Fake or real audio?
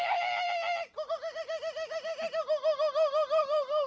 real